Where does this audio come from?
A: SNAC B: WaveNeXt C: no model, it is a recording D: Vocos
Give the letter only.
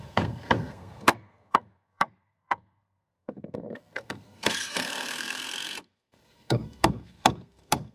A